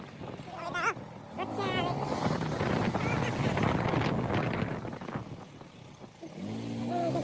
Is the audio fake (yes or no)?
no